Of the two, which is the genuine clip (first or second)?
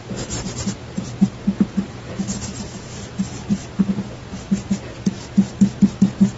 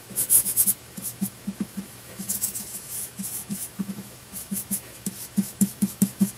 first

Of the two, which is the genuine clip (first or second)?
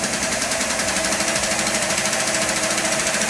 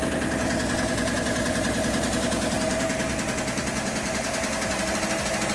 second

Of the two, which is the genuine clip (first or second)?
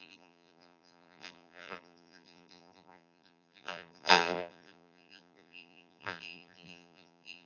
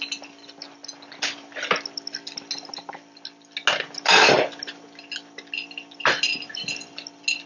second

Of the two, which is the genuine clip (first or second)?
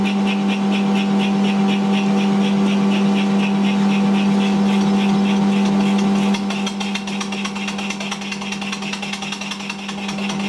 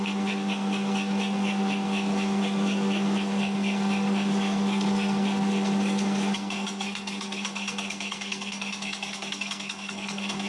first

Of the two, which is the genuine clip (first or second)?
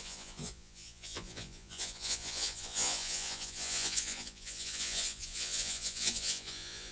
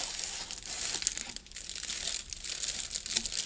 second